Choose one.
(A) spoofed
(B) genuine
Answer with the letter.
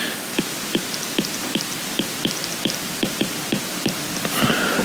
B